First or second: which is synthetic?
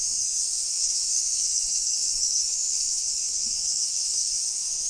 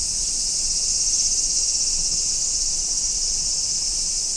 first